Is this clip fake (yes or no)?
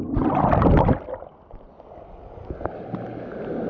no